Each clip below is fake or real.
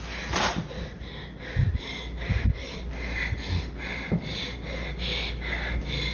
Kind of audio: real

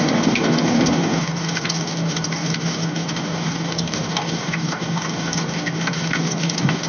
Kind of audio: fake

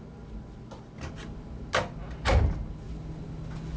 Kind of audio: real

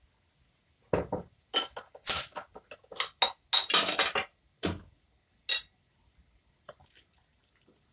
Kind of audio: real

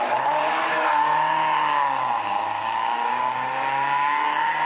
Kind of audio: fake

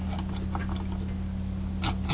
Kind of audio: real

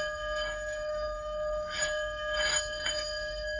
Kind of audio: fake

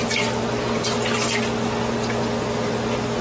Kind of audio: real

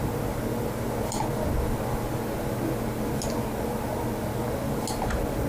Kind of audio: real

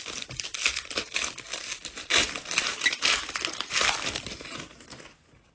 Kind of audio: real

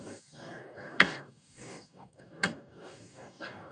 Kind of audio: fake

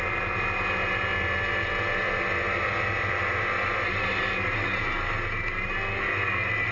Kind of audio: real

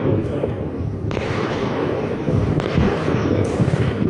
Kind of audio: fake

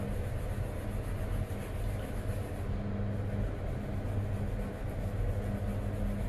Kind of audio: real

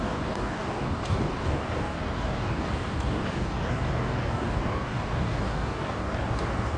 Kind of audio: fake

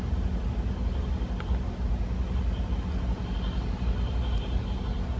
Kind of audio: real